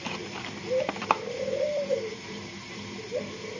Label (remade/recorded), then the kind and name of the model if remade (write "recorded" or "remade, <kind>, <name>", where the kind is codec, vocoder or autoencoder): remade, vocoder, BigVGAN v2